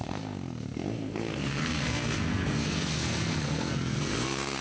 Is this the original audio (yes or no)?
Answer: no